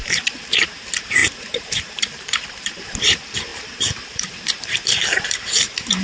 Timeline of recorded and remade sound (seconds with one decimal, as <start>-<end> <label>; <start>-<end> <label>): 0.0-0.6 recorded; 0.6-6.0 remade